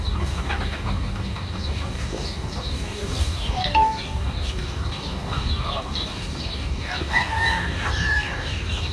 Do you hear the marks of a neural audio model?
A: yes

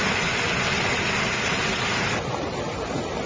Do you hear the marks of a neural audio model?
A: no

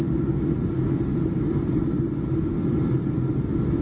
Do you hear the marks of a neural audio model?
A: no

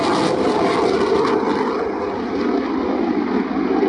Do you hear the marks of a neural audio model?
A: no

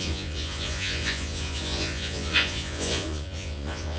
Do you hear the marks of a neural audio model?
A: yes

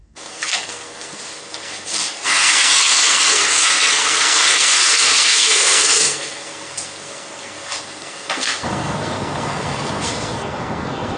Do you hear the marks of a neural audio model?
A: yes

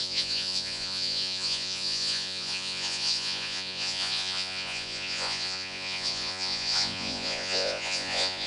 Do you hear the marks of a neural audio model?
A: yes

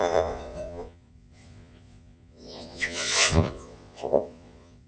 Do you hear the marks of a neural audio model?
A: yes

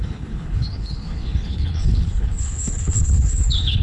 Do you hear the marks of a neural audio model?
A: yes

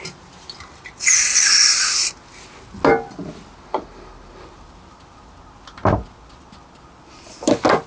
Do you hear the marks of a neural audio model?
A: no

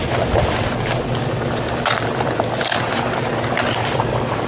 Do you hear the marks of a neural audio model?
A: no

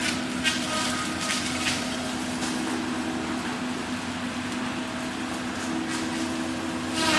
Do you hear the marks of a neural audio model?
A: no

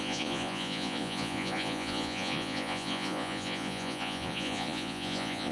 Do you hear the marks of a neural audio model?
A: yes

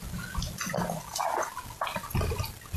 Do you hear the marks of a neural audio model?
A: no